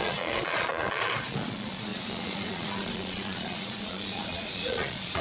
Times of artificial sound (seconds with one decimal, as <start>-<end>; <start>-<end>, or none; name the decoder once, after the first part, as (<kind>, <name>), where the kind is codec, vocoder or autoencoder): 0.0-5.2 (vocoder, Vocos)

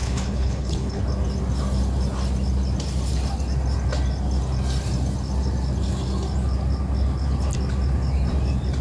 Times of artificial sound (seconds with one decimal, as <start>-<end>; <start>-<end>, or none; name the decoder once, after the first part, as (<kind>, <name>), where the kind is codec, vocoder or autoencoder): 0.0-1.0 (codec, HILCodec)

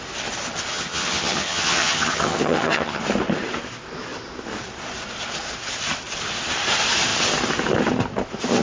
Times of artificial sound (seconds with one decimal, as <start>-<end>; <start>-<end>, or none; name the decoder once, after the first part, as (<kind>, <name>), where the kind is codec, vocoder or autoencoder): 0.7-3.0 (vocoder, HiFi-GAN)

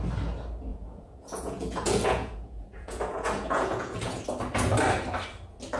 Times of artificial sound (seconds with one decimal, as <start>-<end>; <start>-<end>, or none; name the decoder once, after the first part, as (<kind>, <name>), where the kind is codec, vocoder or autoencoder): 0.7-4.2 (vocoder, Vocos)

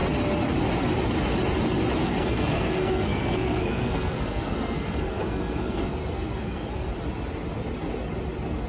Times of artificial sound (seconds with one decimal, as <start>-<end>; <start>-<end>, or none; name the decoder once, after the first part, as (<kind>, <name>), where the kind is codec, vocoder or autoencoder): 2.0-6.9 (codec, SNAC)

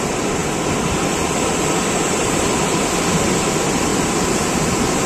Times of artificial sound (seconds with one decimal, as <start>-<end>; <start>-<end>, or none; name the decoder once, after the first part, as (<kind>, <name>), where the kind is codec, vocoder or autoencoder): none

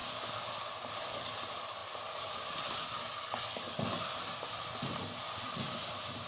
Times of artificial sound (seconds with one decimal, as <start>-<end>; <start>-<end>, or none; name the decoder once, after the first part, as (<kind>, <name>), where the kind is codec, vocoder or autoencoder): none